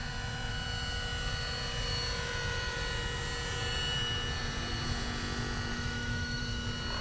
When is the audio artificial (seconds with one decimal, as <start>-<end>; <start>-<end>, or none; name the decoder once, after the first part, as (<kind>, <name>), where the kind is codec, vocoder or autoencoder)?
5.7-6.4 (autoencoder, DAC-VAE)